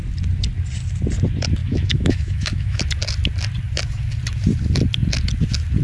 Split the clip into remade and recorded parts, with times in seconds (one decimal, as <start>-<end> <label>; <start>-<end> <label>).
0.0-1.6 recorded; 1.6-2.8 remade; 2.8-5.8 recorded